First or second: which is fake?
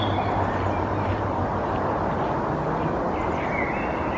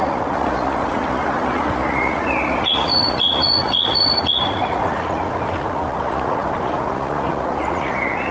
second